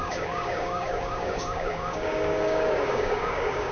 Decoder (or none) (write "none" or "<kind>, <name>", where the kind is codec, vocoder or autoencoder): codec, DAC